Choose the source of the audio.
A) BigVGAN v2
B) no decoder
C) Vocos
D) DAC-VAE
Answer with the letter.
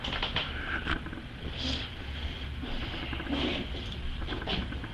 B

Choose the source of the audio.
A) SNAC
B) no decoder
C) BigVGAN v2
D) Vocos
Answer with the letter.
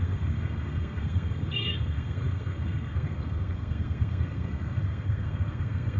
A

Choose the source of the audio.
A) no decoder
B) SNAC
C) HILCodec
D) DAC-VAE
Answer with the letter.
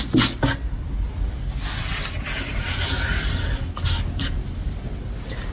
A